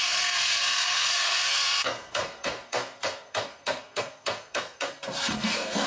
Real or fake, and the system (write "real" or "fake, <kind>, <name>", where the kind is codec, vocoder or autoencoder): fake, codec, SNAC